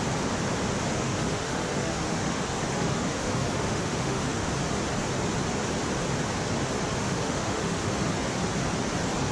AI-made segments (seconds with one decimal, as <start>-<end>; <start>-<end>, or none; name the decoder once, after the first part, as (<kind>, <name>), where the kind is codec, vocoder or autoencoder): 0.9-4.5 (autoencoder, DAC-VAE); 7.0-7.9